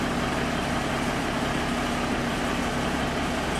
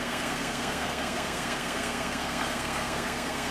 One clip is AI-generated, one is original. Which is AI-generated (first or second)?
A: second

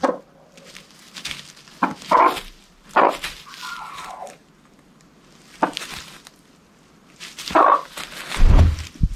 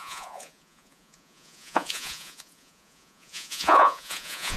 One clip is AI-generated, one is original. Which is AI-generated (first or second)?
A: second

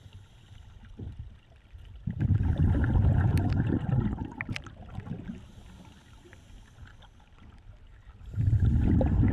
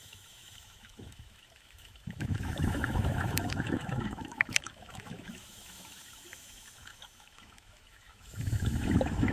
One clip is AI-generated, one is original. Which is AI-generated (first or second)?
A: second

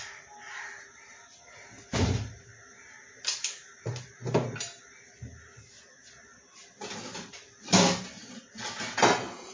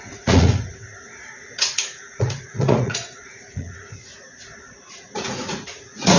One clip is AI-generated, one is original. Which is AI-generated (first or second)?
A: second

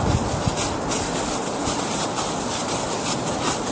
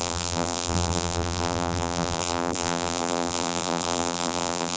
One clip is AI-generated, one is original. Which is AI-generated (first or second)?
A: second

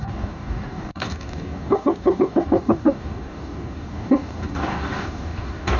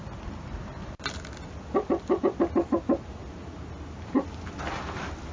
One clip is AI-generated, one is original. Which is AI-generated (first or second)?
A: first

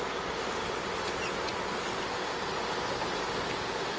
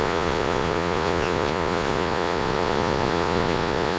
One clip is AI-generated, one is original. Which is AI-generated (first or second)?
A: second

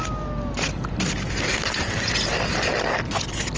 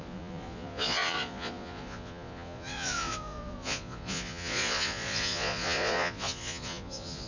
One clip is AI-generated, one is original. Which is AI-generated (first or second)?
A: second